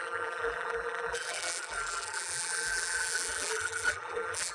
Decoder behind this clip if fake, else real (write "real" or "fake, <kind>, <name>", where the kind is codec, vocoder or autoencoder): fake, vocoder, BigVGAN v2